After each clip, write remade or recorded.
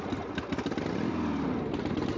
recorded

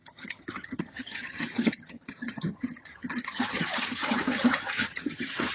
remade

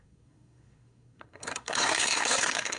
remade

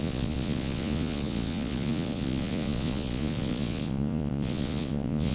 remade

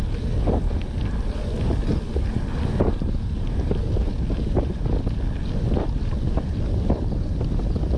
recorded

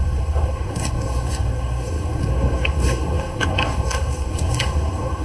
remade